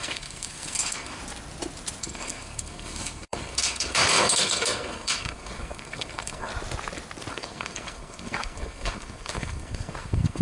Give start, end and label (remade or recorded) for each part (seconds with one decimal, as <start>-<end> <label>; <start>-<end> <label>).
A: 0.0-1.2 remade; 1.2-2.0 recorded; 2.0-6.5 remade; 6.5-7.3 recorded; 7.3-10.4 remade